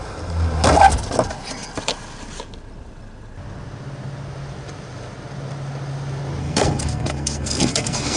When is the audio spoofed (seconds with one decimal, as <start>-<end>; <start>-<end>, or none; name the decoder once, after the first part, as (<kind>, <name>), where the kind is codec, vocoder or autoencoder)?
6.4-8.2 (codec, SNAC)